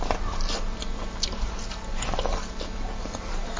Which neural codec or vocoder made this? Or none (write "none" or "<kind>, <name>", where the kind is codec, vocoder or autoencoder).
none